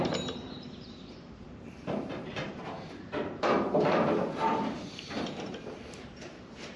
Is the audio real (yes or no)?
no